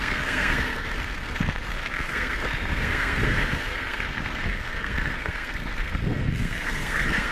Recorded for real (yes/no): no